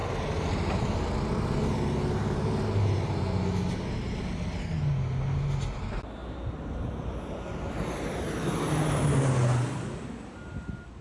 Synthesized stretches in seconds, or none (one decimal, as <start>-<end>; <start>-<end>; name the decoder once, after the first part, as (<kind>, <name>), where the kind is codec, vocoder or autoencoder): none